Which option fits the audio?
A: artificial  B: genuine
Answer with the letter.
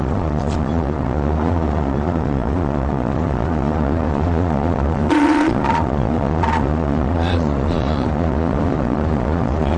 A